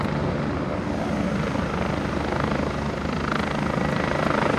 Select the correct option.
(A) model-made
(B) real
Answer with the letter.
B